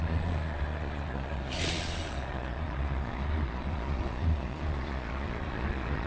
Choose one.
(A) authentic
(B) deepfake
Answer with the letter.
B